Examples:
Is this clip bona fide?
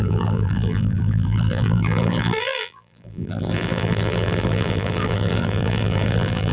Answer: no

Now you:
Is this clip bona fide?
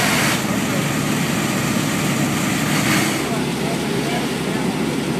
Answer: yes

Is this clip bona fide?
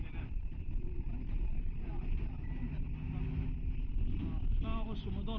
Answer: yes